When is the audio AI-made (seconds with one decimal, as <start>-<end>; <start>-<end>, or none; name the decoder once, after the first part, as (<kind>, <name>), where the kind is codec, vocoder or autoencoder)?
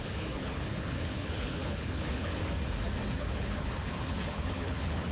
0.0-2.4 (codec, HILCodec); 3.2-5.1